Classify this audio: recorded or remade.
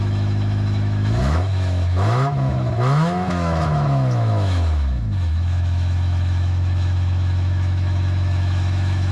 remade